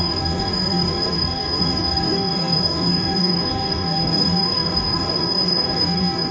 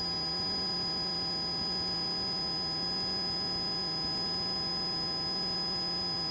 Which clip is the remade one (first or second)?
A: first